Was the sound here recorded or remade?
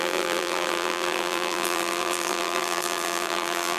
remade